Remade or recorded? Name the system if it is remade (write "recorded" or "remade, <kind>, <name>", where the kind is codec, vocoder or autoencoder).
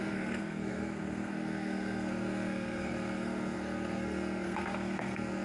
remade, codec, SNAC